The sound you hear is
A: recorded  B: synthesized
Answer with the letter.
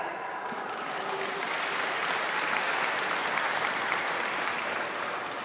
A